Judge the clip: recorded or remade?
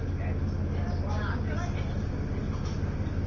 recorded